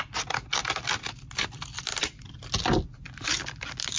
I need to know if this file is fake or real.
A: real